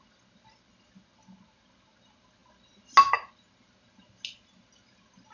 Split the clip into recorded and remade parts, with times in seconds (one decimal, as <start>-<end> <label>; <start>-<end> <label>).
0.0-5.3 recorded